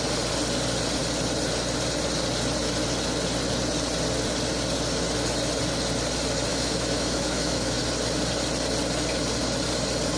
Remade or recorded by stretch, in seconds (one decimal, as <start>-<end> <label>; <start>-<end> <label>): 0.0-6.5 recorded; 6.5-7.8 remade; 7.8-10.2 recorded